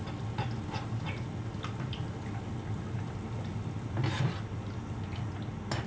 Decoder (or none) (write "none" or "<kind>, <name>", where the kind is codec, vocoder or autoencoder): none